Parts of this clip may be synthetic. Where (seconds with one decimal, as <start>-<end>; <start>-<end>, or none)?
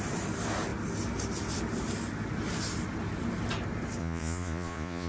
4.0-5.1